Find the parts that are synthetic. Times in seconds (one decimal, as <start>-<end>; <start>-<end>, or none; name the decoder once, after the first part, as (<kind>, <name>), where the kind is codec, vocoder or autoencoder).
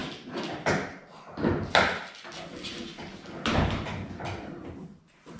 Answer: none